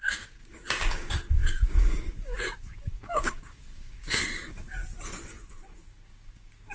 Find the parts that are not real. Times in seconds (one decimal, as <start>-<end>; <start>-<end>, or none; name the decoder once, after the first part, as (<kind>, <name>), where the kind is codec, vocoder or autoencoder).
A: 0.0-4.8 (codec, DAC); 5.5-6.7